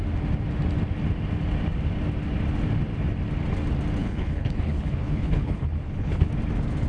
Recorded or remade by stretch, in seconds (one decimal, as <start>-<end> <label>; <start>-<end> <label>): 0.0-4.0 recorded; 4.0-6.3 remade; 6.3-6.9 recorded